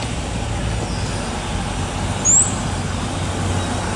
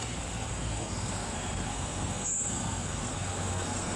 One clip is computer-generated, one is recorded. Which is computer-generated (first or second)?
second